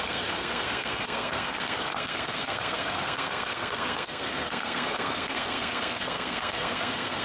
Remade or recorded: remade